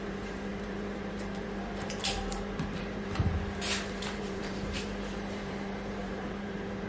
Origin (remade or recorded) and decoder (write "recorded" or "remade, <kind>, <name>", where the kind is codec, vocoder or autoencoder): remade, vocoder, BigVGAN v2